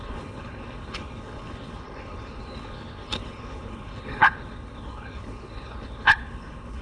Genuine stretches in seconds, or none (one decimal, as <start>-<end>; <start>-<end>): none